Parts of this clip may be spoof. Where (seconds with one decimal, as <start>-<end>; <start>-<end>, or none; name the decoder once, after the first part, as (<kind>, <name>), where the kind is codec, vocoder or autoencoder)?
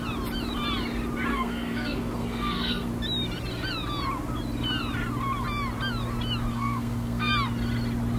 1.3-2.9 (codec, SNAC); 6.5-7.3